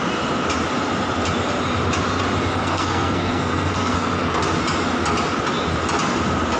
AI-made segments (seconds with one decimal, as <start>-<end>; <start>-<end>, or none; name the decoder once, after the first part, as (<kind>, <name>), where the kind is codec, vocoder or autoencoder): 2.6-4.4 (codec, SNAC)